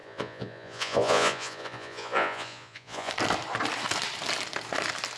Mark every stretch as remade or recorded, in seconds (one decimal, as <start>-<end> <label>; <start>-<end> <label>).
0.0-3.1 remade; 3.1-5.2 recorded